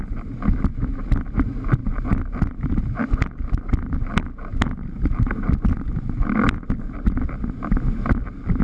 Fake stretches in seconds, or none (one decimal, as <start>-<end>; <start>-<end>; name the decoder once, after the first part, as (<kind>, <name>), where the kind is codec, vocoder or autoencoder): 1.8-2.7 (vocoder, BigVGAN v2)